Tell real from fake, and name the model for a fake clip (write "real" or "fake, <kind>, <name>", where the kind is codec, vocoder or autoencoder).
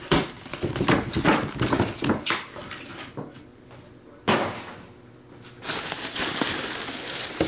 real